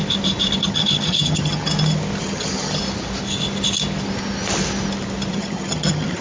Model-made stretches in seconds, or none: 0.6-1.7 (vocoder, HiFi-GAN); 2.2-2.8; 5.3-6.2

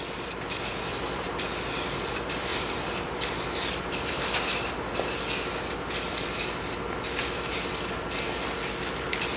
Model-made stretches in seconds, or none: 2.5-3.8 (vocoder, BigVGAN v2)

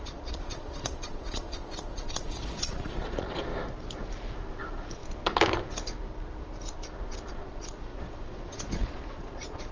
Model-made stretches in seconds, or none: 0.0-3.5 (vocoder, Vocos); 4.6-5.0; 7.3-9.7

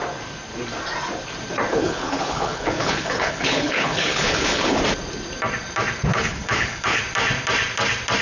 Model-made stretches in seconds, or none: 1.7-4.8 (codec, HILCodec); 6.1-7.0

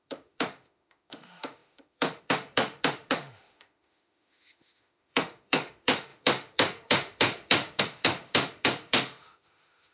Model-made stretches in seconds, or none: 0.0-9.9 (autoencoder, DAC-VAE)

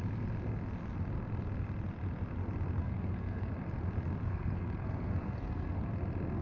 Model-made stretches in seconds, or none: 2.8-3.5 (codec, SNAC); 4.2-5.8